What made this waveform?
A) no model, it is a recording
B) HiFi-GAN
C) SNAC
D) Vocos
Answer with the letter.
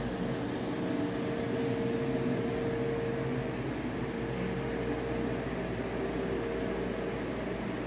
A